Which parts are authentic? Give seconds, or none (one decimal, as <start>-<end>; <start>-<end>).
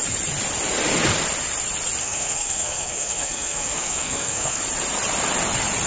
0.0-2.0; 4.6-5.9